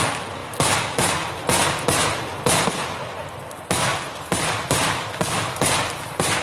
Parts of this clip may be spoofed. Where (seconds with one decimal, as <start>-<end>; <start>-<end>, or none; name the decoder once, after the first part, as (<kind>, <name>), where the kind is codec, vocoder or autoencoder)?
none